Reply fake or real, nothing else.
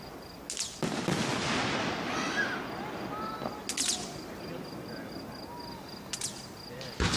real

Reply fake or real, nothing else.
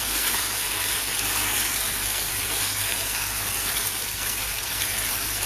fake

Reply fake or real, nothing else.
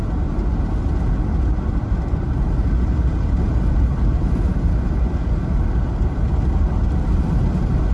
real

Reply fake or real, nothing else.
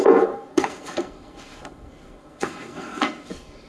fake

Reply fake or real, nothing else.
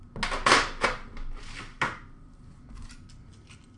real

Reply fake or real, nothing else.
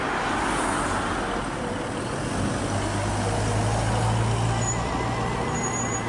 real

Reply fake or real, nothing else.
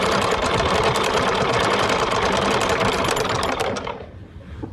real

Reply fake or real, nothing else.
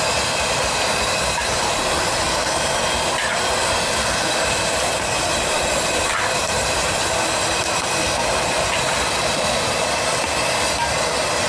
real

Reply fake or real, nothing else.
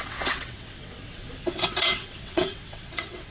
fake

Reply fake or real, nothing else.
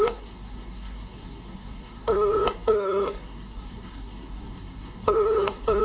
fake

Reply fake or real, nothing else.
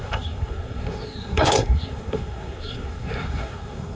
fake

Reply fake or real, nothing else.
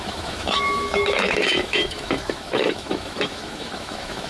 fake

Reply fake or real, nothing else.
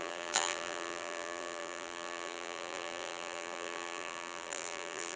fake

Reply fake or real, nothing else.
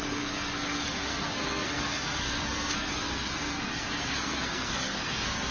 fake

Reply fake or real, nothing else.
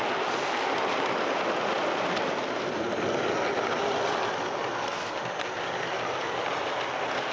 real